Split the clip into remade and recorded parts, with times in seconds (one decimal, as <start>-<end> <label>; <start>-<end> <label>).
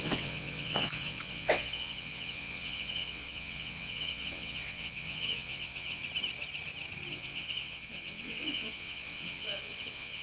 0.0-6.0 remade; 6.0-7.1 recorded; 7.1-10.2 remade